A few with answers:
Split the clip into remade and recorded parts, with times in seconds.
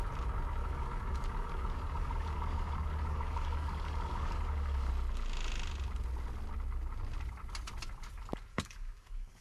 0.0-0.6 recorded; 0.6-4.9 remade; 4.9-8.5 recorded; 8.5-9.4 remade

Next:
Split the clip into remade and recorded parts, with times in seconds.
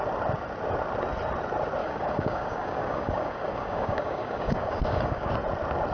0.0-1.8 recorded; 1.8-5.3 remade; 5.3-5.9 recorded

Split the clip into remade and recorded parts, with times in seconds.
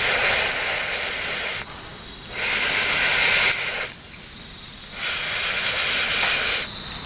0.0-7.1 recorded